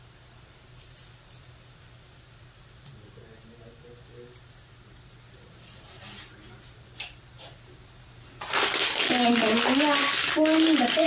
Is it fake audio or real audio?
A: real